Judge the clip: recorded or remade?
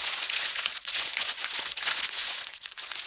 remade